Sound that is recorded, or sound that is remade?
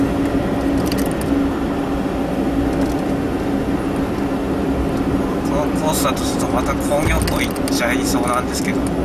recorded